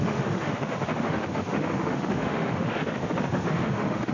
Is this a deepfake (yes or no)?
yes